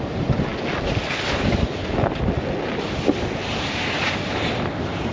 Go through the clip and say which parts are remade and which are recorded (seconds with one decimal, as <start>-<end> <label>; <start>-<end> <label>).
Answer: 0.0-3.1 recorded; 3.1-5.1 remade